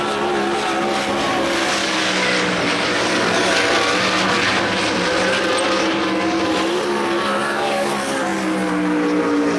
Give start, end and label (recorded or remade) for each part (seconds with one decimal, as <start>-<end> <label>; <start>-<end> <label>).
0.0-1.8 recorded; 1.8-3.5 remade; 3.5-7.4 recorded; 7.4-7.9 remade; 7.9-9.6 recorded